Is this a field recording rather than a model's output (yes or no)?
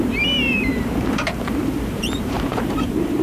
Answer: no